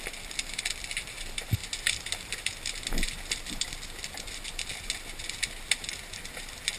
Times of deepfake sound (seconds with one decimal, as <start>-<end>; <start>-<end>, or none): none